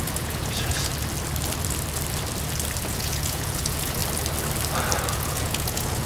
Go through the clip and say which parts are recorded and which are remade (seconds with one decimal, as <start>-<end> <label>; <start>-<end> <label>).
0.0-0.9 remade; 0.9-2.8 recorded; 2.8-4.0 remade; 4.0-5.1 recorded; 5.1-6.1 remade